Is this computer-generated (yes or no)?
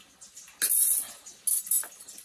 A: no